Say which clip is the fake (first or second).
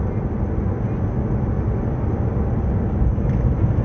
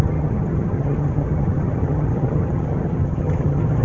second